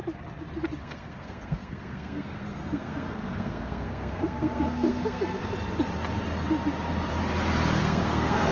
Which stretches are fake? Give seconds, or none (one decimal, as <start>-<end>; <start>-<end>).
0.8-5.5; 7.8-8.5